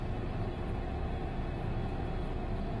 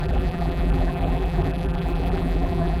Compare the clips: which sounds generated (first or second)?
second